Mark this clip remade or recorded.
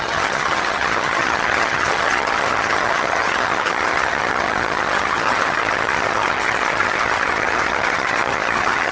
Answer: remade